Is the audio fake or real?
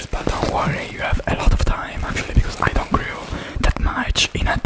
real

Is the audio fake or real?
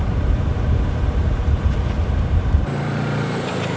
fake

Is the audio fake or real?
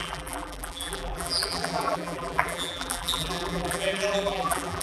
fake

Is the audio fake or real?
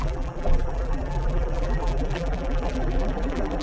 fake